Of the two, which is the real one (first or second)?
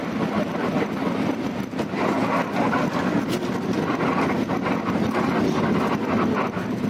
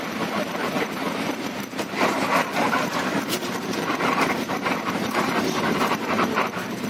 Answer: first